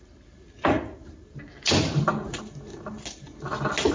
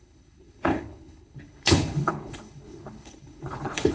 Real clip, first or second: first